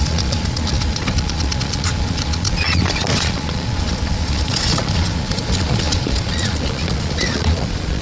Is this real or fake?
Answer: fake